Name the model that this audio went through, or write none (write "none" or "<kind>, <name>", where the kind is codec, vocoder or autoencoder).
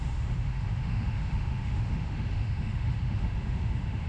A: autoencoder, DAC-VAE